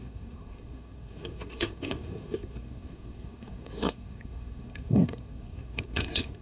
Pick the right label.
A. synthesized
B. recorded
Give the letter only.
A